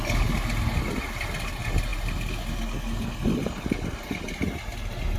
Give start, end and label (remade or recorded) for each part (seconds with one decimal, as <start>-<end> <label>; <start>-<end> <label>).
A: 0.0-5.2 recorded

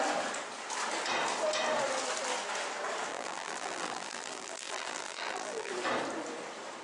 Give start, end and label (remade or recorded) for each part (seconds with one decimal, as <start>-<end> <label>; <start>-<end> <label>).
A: 0.0-3.1 recorded; 3.1-5.7 remade; 5.7-6.8 recorded

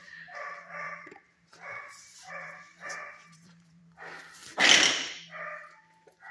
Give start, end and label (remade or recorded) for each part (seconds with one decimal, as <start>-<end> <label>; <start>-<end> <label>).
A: 0.0-3.8 remade; 3.8-6.3 recorded

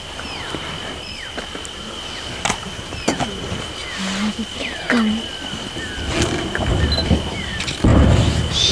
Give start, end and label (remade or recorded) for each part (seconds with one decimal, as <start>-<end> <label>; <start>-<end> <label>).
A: 0.0-7.9 recorded; 7.9-8.7 remade